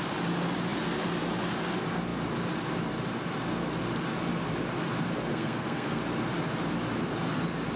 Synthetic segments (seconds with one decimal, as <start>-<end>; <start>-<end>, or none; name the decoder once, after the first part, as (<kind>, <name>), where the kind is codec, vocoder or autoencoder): 5.3-6.0 (codec, SNAC)